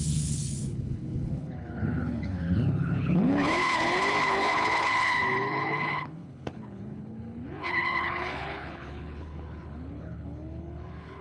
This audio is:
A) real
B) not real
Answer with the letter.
B